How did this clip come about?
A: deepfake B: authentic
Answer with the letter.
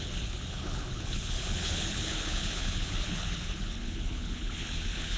A